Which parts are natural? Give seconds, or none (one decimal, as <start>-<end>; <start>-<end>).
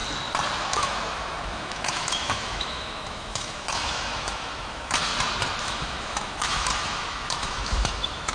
0.0-0.6; 5.1-5.6